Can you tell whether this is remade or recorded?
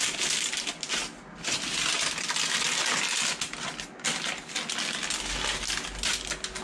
recorded